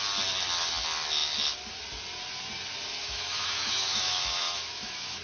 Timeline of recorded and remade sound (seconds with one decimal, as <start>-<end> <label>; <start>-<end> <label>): 0.0-3.0 recorded; 3.0-5.2 remade